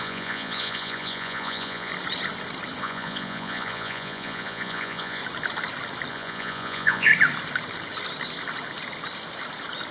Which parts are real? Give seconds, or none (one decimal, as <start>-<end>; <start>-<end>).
1.9-2.8; 5.2-6.1; 7.1-9.9